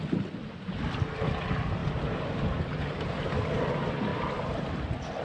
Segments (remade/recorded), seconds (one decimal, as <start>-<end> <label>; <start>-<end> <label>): 0.0-1.8 recorded; 1.8-3.6 remade; 3.6-4.1 recorded; 4.1-4.8 remade; 4.8-5.2 recorded